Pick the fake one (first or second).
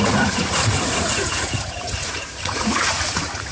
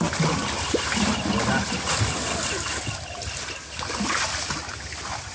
first